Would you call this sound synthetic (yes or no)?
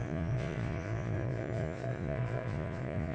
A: yes